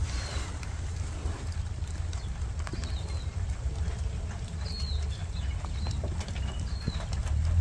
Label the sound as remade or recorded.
recorded